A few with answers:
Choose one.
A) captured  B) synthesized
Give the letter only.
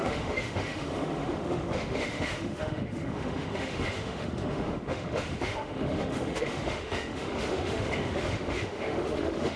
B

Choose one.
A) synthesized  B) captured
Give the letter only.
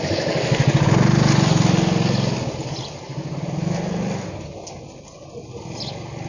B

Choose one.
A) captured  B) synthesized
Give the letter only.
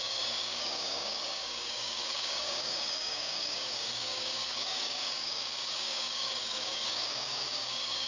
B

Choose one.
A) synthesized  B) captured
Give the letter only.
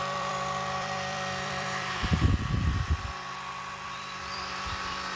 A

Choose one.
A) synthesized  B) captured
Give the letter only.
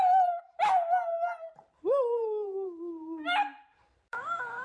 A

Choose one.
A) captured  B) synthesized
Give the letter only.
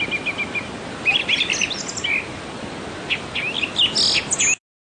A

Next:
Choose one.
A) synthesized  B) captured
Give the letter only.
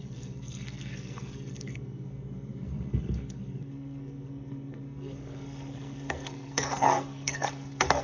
A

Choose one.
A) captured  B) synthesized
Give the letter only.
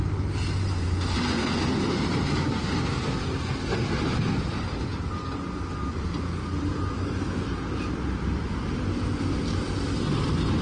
A